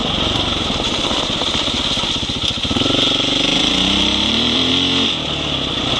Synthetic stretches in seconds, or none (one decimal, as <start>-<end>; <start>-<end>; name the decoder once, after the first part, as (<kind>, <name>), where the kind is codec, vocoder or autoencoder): 0.0-1.8 (vocoder, BigVGAN v2); 3.5-4.7